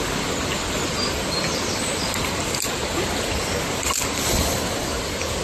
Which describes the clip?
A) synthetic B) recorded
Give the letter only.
B